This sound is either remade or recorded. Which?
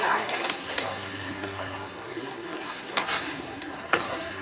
remade